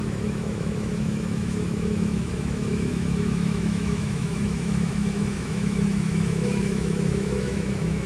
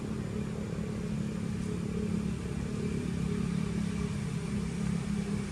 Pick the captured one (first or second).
second